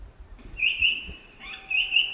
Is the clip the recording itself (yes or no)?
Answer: no